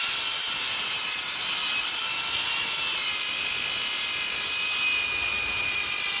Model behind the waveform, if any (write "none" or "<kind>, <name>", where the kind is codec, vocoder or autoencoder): none